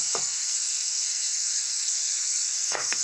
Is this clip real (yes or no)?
no